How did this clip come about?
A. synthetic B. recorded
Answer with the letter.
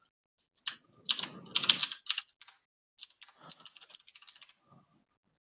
B